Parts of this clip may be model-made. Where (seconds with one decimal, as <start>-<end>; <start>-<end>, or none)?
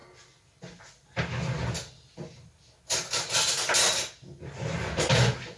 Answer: none